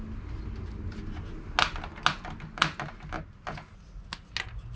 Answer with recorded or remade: recorded